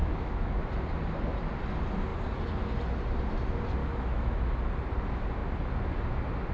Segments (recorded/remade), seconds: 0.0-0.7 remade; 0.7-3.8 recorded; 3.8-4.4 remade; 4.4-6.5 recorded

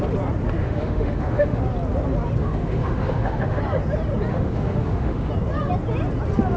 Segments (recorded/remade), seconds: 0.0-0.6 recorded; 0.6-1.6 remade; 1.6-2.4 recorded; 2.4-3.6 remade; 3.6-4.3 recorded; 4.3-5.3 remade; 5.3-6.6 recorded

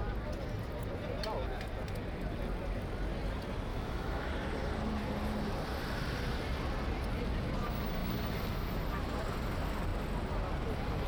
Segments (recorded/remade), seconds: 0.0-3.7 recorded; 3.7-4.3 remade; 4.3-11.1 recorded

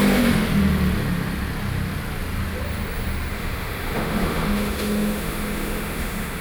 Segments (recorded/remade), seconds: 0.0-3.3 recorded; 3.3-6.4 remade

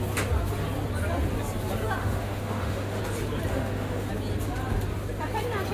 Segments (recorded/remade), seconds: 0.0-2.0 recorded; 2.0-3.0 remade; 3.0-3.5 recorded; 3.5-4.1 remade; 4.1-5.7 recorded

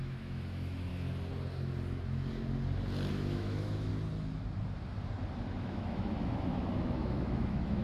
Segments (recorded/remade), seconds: 0.0-0.9 remade; 0.9-3.1 recorded; 3.1-3.9 remade; 3.9-5.6 recorded; 5.6-7.8 remade

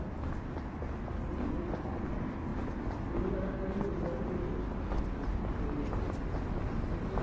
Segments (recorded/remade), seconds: 0.0-7.2 recorded